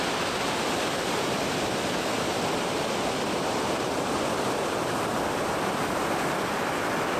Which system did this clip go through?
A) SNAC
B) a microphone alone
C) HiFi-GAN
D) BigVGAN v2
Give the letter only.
B